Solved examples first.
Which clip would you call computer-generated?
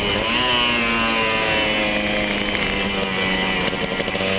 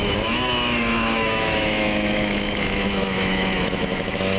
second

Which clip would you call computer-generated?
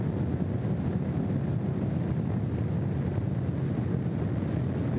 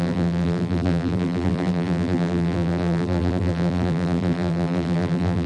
second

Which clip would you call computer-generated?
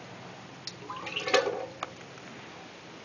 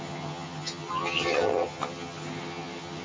second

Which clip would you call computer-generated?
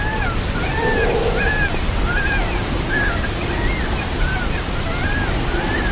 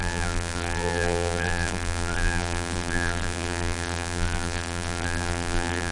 second